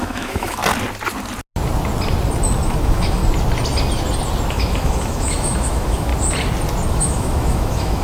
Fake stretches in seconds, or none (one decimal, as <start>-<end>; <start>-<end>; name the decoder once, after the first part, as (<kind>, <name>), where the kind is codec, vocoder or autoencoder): 0.0-0.6 (autoencoder, DAC-VAE); 2.8-3.2; 4.5-6.1; 6.9-8.0